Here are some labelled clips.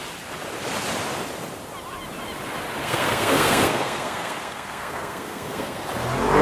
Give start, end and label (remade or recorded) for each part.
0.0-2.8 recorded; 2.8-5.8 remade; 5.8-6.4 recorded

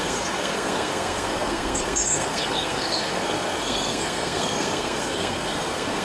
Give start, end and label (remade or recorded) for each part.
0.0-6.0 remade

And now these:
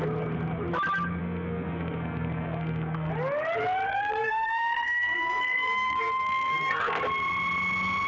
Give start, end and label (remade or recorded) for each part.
0.0-1.2 recorded; 1.2-3.1 remade; 3.1-3.9 recorded; 3.9-7.0 remade; 7.0-8.1 recorded

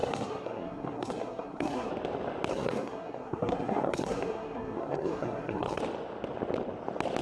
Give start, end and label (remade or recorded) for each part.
0.0-1.9 remade; 1.9-2.5 recorded; 2.5-5.8 remade; 5.8-7.2 recorded